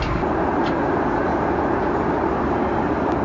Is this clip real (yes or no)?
yes